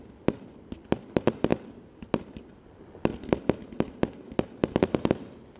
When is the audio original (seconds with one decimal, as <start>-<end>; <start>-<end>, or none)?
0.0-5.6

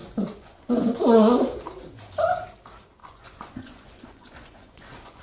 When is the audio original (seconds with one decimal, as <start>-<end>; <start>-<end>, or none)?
1.0-3.0

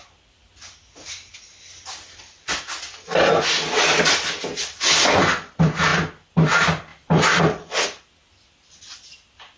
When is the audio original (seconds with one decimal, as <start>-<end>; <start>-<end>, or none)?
0.0-9.6

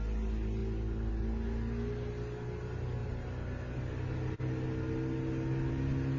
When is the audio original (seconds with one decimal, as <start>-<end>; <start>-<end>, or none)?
0.0-6.2

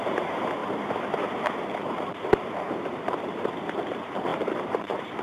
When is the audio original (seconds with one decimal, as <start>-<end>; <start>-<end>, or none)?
none

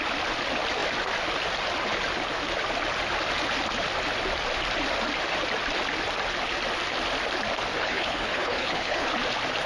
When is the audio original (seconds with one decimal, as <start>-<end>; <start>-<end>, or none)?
0.0-7.8; 9.1-9.7

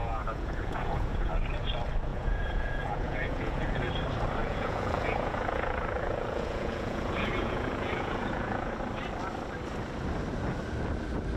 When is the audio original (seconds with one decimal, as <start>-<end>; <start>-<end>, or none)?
1.3-2.1; 3.8-4.4; 8.7-11.4

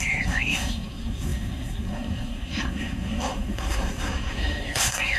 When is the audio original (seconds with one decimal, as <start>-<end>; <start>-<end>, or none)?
none